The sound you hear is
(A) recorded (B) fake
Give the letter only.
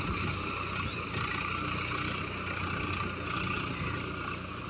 A